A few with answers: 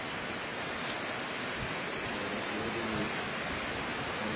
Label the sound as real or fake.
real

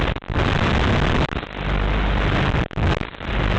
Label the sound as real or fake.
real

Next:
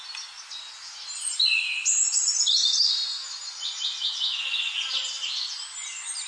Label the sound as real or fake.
real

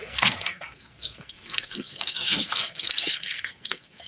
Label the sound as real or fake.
fake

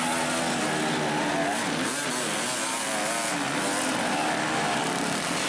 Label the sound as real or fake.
real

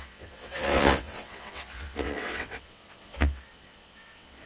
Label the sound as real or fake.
fake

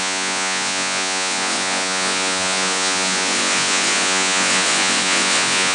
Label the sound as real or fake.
fake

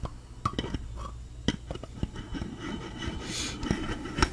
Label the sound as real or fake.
real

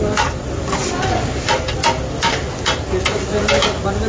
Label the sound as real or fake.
real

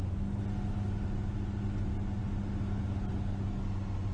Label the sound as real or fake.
real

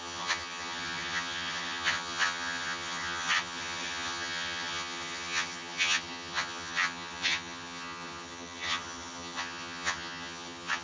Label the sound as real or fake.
fake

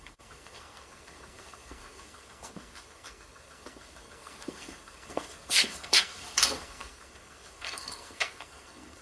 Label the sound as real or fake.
fake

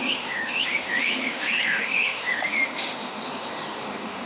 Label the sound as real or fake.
fake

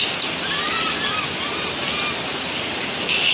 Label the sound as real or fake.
real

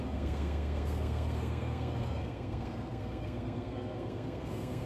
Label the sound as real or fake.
fake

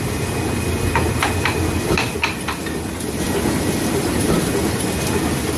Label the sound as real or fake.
real